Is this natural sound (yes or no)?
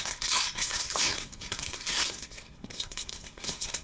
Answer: no